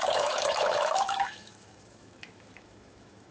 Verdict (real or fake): fake